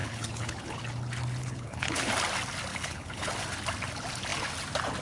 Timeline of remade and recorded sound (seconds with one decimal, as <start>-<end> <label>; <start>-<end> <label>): 0.0-0.8 remade; 0.8-1.4 recorded; 1.4-2.1 remade; 2.1-2.7 recorded; 2.7-3.3 remade; 3.3-5.0 recorded